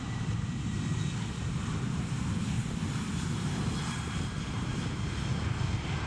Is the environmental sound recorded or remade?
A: recorded